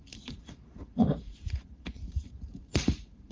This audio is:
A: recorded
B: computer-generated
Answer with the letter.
B